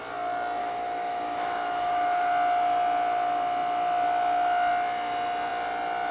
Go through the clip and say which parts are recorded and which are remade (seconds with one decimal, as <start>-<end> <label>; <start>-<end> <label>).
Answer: 0.0-0.6 recorded; 0.6-2.3 remade; 2.3-6.1 recorded